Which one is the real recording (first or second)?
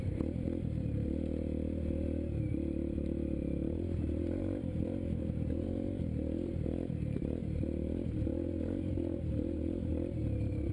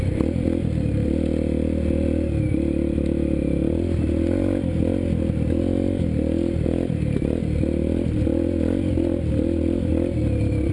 second